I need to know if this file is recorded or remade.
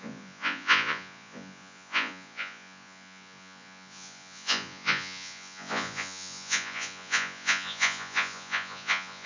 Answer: remade